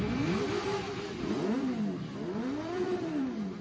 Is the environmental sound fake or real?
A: fake